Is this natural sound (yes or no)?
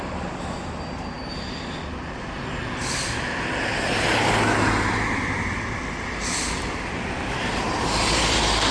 yes